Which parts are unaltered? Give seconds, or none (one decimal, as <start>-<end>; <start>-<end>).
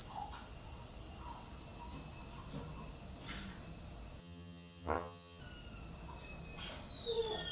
0.0-4.2; 5.4-7.5